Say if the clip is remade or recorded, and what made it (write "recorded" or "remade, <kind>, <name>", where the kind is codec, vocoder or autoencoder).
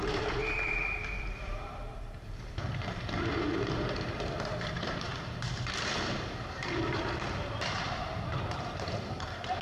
remade, vocoder, BigVGAN v2